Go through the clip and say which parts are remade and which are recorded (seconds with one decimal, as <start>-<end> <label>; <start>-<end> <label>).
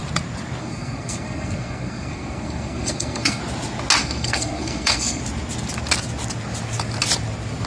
0.0-0.6 recorded; 0.6-3.4 remade; 3.4-4.0 recorded; 4.0-5.2 remade; 5.2-7.7 recorded